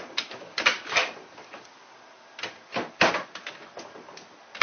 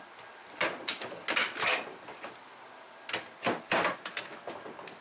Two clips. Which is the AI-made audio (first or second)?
first